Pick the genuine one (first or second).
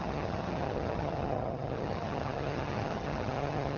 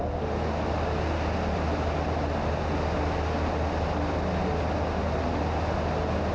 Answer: second